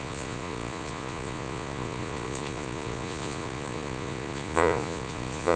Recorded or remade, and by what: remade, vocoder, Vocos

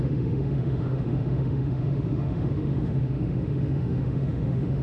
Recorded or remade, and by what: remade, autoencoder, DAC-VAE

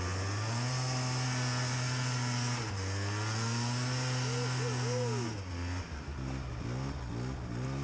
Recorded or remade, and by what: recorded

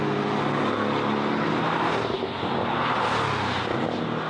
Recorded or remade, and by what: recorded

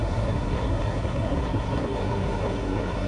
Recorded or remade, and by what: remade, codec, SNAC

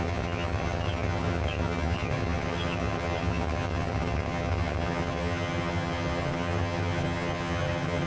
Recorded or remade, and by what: remade, vocoder, HiFi-GAN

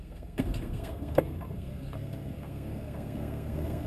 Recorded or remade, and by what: remade, codec, SNAC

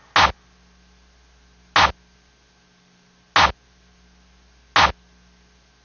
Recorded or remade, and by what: recorded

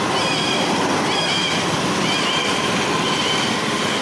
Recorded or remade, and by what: recorded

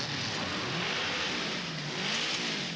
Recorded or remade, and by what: recorded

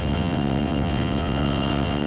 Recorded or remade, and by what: remade, vocoder, WaveNeXt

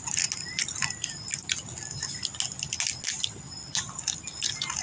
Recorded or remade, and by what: recorded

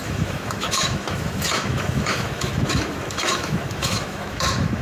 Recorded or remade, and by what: remade, autoencoder, DAC-VAE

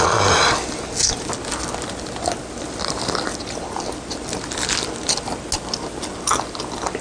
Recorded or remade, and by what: recorded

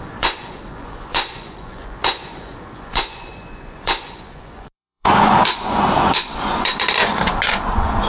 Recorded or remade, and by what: remade, vocoder, Vocos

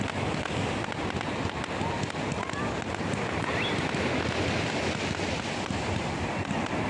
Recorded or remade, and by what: recorded